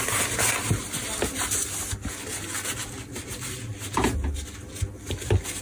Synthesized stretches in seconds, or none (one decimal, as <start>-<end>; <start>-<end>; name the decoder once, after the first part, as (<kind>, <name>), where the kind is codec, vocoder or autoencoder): none